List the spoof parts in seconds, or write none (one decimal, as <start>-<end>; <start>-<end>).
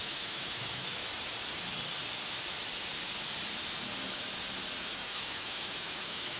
0.0-1.0; 4.8-6.4